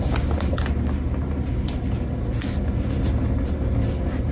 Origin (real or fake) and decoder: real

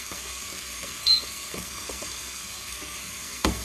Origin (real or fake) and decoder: fake, codec, SNAC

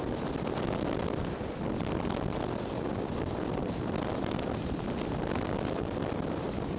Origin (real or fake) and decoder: real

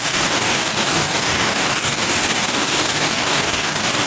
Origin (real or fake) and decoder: fake, codec, DAC